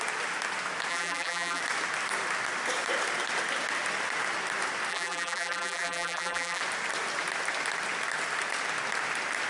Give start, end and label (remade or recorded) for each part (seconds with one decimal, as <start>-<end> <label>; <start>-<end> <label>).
0.0-0.9 recorded; 0.9-1.6 remade; 1.6-4.9 recorded; 4.9-6.6 remade; 6.6-9.5 recorded